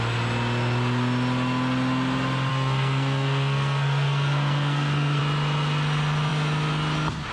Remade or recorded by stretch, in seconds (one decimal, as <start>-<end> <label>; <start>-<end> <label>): 0.0-2.5 recorded; 2.5-5.2 remade; 5.2-7.3 recorded